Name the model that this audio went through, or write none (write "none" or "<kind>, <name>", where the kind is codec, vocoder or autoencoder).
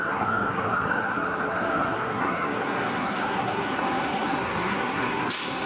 codec, SNAC